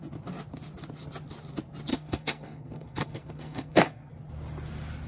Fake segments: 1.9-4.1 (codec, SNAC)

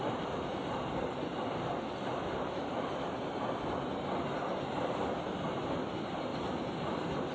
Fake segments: none

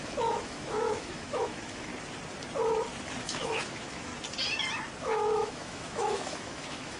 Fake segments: 0.0-1.9 (autoencoder, DAC-VAE); 3.2-4.1; 5.0-7.0

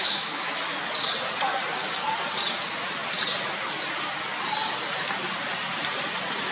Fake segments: 0.0-0.6 (autoencoder, DAC-VAE)

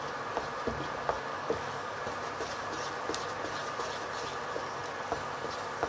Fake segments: 1.3-2.0 (codec, DAC)